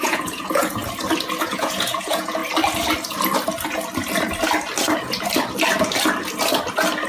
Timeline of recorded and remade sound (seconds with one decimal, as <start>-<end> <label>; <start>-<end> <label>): 0.0-0.8 remade; 0.8-1.4 recorded; 1.4-2.4 remade; 2.4-7.1 recorded